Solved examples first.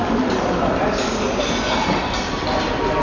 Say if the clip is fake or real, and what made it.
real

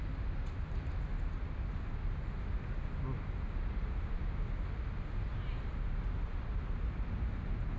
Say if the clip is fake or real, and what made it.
real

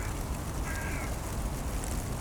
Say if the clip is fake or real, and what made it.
real